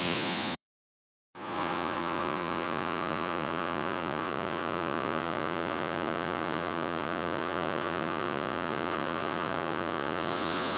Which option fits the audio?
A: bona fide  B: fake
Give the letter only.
B